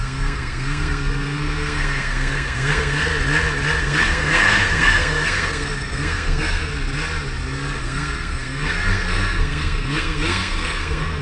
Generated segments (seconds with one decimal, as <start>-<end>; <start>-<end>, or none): 0.0-3.1; 3.8-6.7; 7.8-11.2